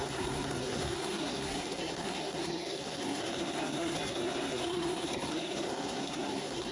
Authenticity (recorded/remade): remade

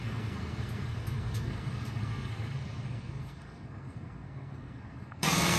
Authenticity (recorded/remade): remade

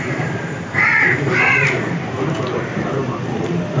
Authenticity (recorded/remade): recorded